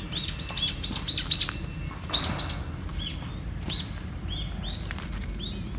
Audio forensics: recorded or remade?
recorded